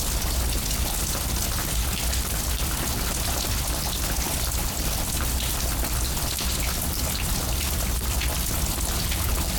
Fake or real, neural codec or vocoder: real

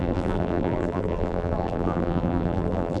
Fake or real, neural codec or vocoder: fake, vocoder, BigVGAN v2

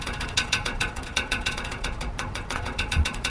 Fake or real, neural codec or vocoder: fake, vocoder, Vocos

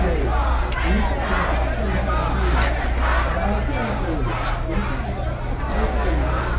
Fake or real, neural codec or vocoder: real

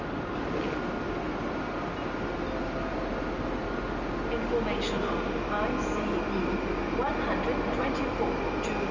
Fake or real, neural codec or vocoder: real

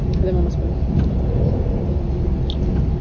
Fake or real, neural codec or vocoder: real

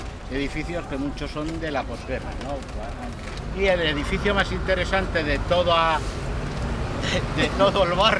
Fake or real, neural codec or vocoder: real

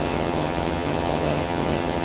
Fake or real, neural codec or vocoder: fake, vocoder, HiFi-GAN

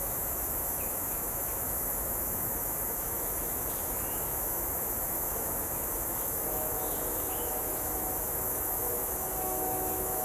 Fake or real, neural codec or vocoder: fake, autoencoder, DAC-VAE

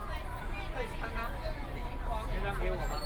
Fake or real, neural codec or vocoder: real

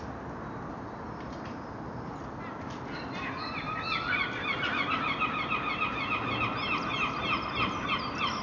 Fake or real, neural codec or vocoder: real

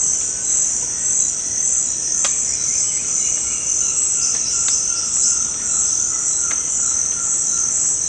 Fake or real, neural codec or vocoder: real